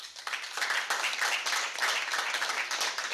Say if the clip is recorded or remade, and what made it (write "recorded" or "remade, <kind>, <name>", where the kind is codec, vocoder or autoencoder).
recorded